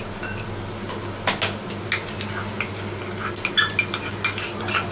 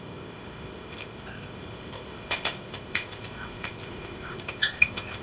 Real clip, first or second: first